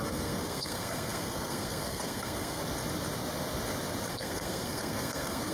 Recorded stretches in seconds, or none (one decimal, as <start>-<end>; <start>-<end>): 2.6-4.1

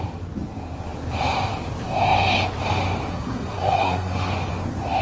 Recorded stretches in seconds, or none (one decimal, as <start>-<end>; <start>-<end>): 0.0-3.1; 4.3-5.0

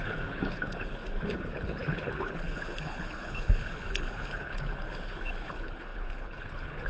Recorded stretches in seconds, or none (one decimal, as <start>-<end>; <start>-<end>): none

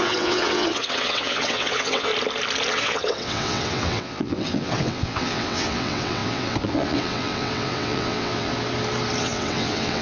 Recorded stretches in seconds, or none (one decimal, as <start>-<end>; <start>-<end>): 2.1-2.7; 8.5-9.2

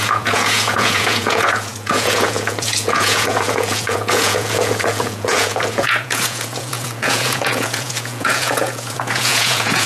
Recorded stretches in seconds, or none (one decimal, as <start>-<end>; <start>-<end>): none

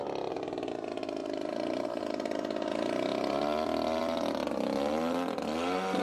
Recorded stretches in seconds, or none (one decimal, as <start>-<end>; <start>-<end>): 0.0-1.2; 2.0-3.1; 4.0-6.0

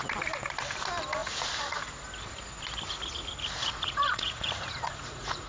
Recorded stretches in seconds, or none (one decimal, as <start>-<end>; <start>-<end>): 0.0-1.2; 1.8-3.6

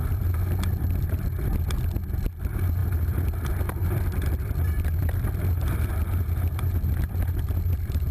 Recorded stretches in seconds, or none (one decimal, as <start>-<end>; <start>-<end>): 0.0-8.1